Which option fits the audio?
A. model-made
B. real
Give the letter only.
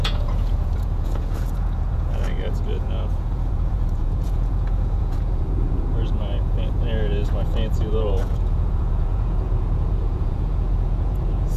A